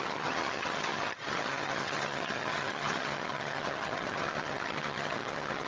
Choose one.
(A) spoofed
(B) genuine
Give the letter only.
A